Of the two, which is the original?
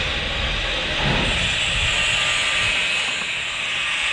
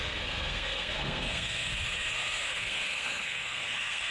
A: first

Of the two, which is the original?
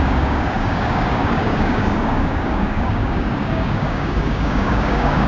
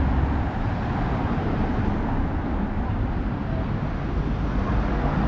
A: second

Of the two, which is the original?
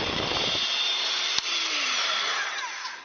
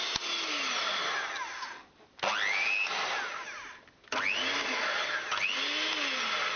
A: second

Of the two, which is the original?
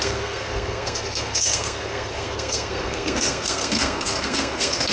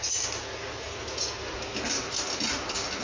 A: second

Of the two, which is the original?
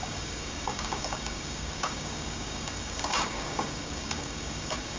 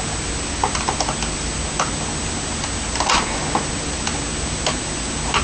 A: second